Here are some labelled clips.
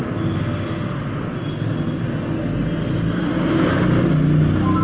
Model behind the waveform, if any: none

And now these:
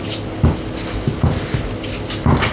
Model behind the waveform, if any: none